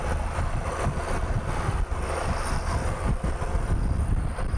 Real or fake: real